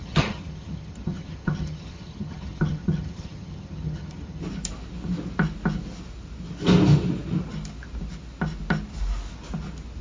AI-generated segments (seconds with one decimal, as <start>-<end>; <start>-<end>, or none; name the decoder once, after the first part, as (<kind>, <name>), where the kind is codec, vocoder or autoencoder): 0.0-4.4 (vocoder, HiFi-GAN)